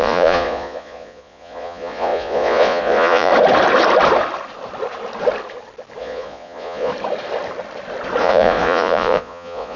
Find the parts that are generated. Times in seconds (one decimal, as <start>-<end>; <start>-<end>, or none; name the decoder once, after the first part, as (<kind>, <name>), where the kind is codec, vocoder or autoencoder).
0.0-3.3 (vocoder, Vocos); 6.0-6.9; 8.2-9.8